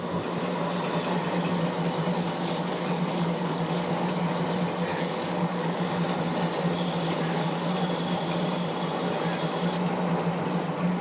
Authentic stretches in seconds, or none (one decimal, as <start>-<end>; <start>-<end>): 0.0-2.1; 4.1-4.9; 6.0-7.1; 7.7-11.0